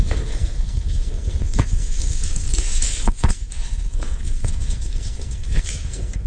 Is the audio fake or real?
fake